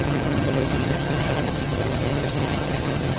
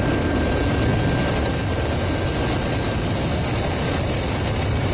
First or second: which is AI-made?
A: first